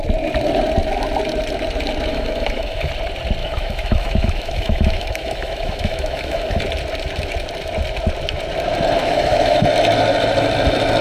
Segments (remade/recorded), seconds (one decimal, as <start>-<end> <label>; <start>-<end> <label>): 0.0-2.1 recorded; 2.1-2.9 remade; 2.9-3.4 recorded; 3.4-6.6 remade; 6.6-9.0 recorded; 9.0-9.6 remade; 9.6-11.0 recorded